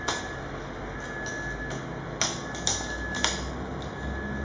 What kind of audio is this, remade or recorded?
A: recorded